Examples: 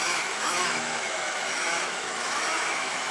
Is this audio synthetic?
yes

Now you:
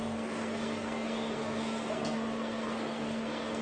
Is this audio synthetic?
yes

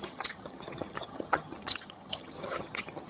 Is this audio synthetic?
yes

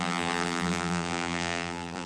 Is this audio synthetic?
yes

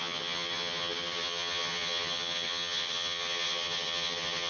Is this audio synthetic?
yes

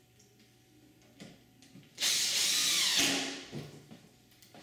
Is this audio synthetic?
no